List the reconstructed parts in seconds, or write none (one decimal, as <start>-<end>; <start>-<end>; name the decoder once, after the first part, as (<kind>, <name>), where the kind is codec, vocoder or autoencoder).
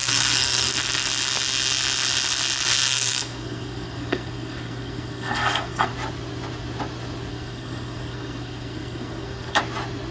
0.0-0.7 (codec, SNAC); 2.7-5.9; 7.3-9.6